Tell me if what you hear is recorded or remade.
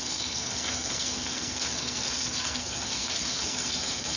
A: remade